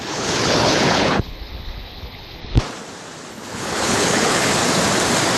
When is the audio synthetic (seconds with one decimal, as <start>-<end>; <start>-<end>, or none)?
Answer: 0.0-2.4; 3.3-4.6